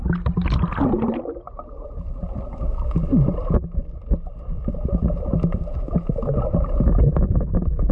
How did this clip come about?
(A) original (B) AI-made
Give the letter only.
A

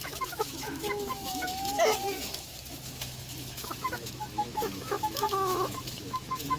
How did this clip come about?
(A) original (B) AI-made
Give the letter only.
B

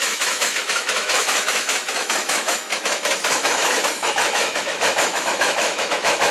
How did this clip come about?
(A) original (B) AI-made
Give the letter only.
B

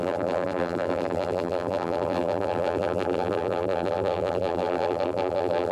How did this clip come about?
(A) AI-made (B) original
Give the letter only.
A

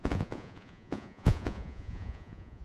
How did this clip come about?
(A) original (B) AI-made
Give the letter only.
B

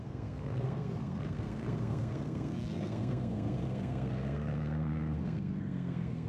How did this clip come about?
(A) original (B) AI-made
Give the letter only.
B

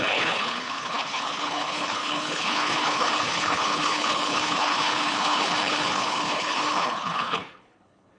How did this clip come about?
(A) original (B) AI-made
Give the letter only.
B